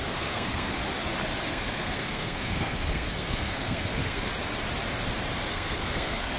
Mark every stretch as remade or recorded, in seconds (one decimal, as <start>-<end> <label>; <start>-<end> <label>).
0.0-0.8 remade; 0.8-1.5 recorded; 1.5-4.3 remade; 4.3-5.5 recorded; 5.5-6.4 remade